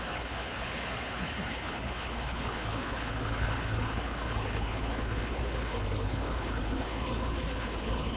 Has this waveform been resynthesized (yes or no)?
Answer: yes